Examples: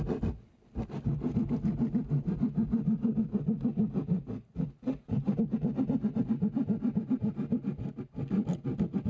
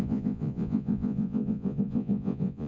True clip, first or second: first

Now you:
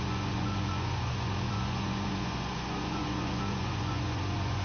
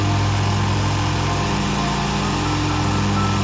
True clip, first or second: second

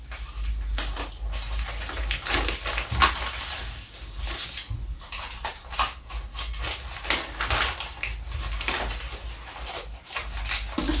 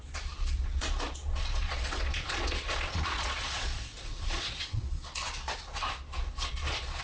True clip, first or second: first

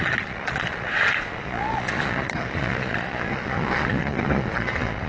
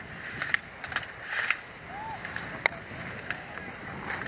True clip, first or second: second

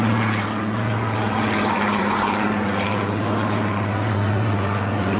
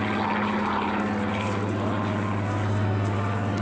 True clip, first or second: second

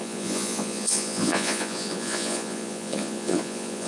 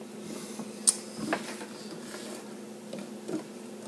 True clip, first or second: second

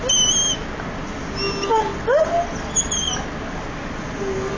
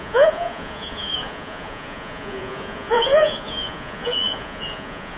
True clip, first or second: first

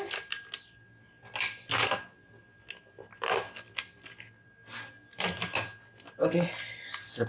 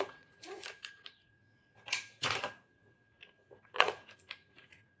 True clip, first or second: first